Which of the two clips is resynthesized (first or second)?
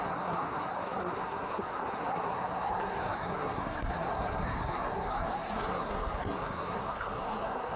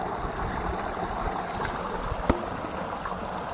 first